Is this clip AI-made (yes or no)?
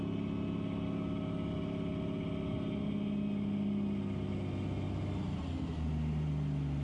no